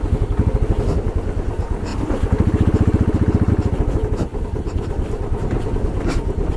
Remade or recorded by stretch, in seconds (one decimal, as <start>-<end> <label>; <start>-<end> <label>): 0.0-4.3 recorded; 4.3-5.7 remade; 5.7-6.6 recorded